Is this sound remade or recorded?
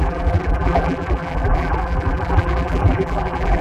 remade